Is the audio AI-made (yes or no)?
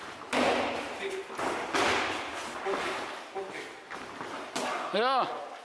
no